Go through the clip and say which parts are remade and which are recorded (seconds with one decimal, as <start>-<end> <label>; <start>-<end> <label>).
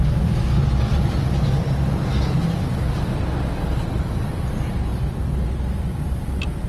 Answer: 0.0-4.9 recorded; 4.9-5.6 remade; 5.6-6.7 recorded